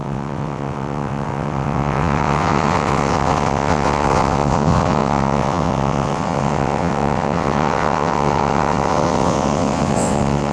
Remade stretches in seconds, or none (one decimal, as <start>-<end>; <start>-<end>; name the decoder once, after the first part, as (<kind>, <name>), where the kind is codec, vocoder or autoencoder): 0.0-10.5 (vocoder, WaveNeXt)